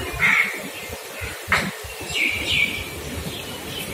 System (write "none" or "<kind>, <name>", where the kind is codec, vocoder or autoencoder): none